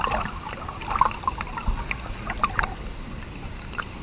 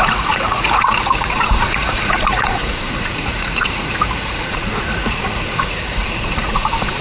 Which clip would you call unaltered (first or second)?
first